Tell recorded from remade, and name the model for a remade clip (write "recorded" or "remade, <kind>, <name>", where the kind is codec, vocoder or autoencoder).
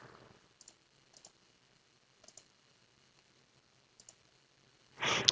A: recorded